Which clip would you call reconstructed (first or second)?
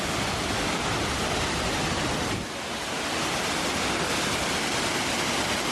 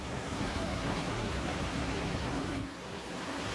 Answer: second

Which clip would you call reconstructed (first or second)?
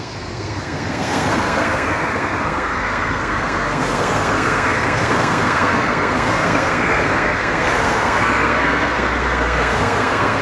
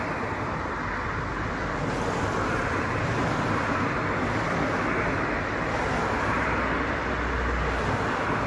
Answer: first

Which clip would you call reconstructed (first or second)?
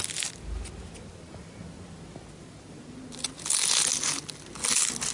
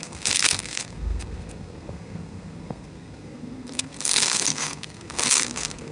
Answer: second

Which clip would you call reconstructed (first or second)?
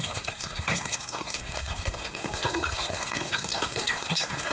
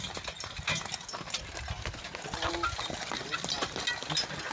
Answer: first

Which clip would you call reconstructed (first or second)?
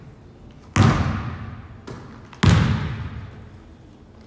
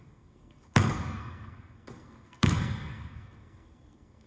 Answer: second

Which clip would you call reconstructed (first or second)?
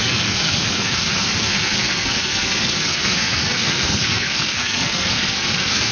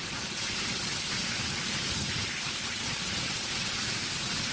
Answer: first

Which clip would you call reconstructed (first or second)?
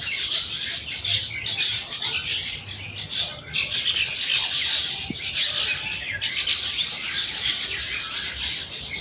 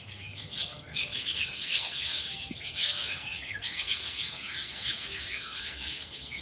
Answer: second